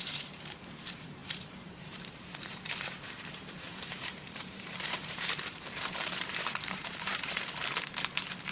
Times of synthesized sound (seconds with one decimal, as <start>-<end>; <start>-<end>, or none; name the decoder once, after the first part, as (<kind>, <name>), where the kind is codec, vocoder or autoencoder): 0.0-8.5 (vocoder, BigVGAN v2)